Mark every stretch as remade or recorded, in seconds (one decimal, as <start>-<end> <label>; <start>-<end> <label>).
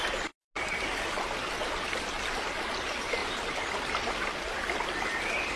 0.0-5.6 recorded